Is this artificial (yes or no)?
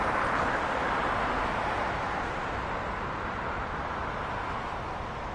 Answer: no